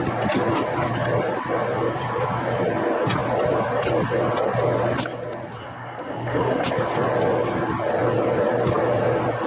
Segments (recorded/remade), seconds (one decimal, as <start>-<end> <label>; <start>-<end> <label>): 0.0-5.6 recorded; 5.6-6.7 remade; 6.7-9.5 recorded